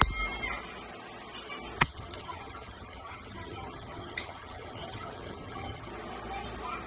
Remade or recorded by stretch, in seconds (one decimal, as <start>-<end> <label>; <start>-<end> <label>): 0.0-1.8 recorded; 1.8-5.9 remade; 5.9-6.9 recorded

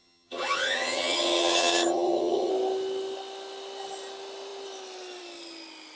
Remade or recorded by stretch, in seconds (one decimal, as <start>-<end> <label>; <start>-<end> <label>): 0.0-2.5 remade; 2.5-6.0 recorded

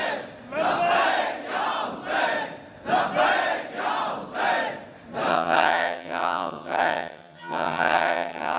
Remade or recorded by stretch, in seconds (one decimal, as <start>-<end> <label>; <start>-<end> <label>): 0.0-5.3 recorded; 5.3-8.6 remade

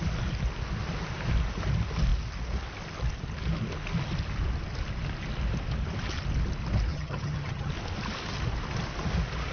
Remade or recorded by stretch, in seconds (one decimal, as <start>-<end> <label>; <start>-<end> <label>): 0.0-6.9 recorded; 6.9-7.7 remade; 7.7-9.5 recorded

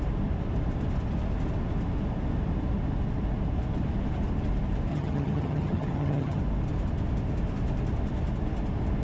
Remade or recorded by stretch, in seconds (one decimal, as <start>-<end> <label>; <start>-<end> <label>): 0.0-4.9 recorded; 4.9-6.4 remade; 6.4-9.0 recorded

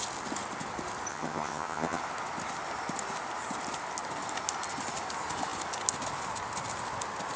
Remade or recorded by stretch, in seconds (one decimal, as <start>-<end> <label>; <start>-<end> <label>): 0.0-1.1 recorded; 1.1-2.0 remade; 2.0-7.4 recorded

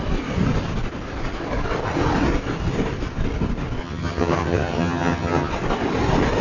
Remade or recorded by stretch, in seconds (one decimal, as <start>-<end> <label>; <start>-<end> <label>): 0.0-3.8 recorded; 3.8-5.5 remade; 5.5-6.4 recorded